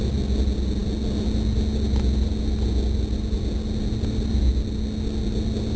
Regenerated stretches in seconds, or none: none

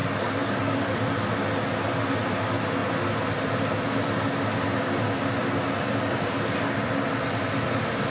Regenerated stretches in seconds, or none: 0.0-1.0 (codec, DAC)

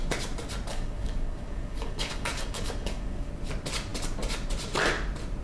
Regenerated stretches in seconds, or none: 0.7-3.3 (codec, DAC)

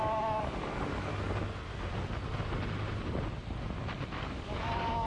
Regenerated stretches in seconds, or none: 0.0-1.1 (codec, DAC); 4.2-5.1

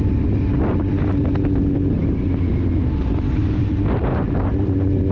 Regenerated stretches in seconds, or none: none

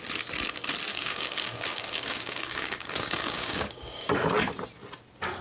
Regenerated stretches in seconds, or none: 0.9-4.1 (codec, DAC)

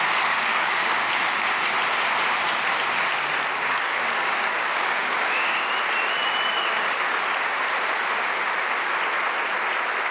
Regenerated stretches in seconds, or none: 0.5-1.1 (codec, DAC); 3.5-5.7